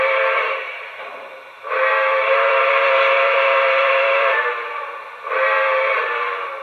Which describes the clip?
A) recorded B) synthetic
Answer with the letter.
B